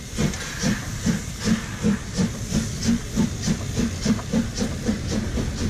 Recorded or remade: recorded